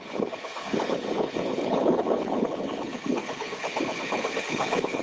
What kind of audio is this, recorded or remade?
remade